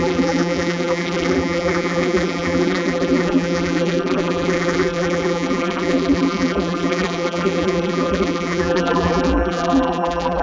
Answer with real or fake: fake